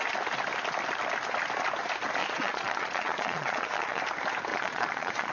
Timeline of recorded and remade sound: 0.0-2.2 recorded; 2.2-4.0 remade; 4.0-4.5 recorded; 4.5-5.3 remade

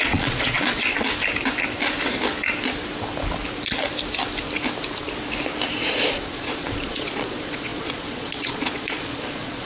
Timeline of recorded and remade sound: 0.0-1.0 remade; 1.0-6.1 recorded; 6.1-9.7 remade

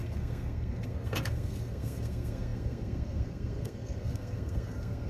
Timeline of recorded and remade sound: 0.0-5.1 remade

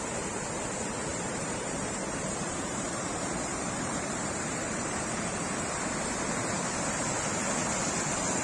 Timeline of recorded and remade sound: 0.0-1.1 recorded; 1.1-5.4 remade; 5.4-8.4 recorded

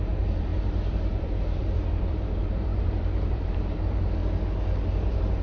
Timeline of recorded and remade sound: 0.0-4.2 remade; 4.2-4.9 recorded; 4.9-5.4 remade

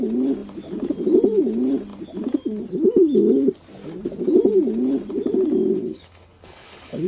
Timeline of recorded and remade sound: 0.0-5.9 recorded; 5.9-7.1 remade